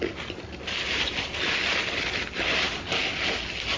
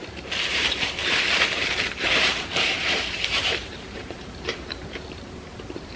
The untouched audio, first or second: first